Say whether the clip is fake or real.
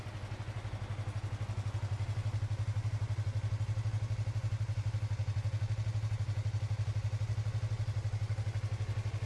real